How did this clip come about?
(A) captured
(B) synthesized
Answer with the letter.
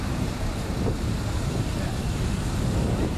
B